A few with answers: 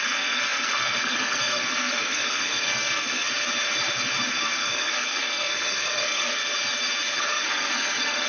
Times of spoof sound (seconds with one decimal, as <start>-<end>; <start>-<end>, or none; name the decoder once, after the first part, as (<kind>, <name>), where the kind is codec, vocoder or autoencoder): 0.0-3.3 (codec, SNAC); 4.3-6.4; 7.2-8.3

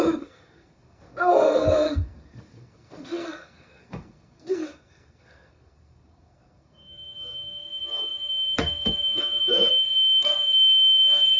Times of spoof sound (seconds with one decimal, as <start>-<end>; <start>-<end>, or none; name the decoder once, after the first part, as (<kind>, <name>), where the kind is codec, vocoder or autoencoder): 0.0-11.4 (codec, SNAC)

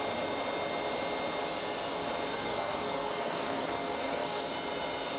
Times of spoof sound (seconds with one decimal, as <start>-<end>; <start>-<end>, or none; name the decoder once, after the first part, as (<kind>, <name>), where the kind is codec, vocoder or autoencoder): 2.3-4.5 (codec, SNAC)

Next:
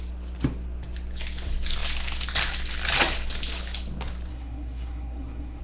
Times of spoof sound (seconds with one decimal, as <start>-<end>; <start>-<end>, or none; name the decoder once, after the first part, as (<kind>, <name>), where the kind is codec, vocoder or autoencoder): 4.3-5.6 (codec, SNAC)